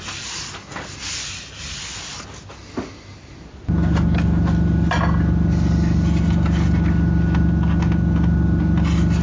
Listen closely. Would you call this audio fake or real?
real